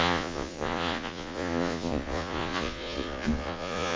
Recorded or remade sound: remade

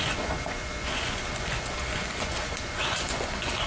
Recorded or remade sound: remade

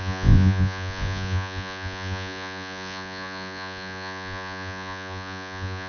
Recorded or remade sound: remade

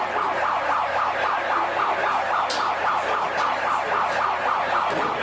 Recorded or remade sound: recorded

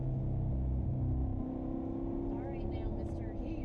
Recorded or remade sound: recorded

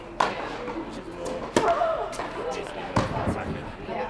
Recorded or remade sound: recorded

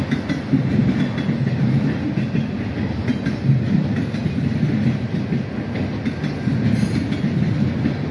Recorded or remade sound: recorded